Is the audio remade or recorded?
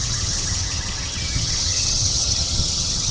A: remade